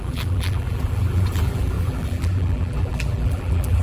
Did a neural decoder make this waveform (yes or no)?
yes